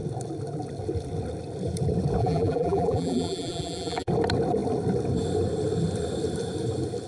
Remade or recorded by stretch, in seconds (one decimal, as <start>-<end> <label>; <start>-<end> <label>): 0.0-2.2 recorded; 2.2-4.1 remade; 4.1-7.1 recorded